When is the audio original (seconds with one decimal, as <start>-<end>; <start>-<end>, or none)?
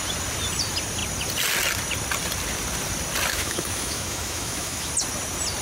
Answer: 0.0-3.3; 4.9-5.6